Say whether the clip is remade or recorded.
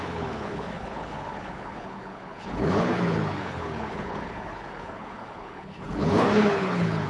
remade